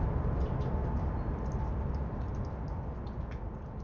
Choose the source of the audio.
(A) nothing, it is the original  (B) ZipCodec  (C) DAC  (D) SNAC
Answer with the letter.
A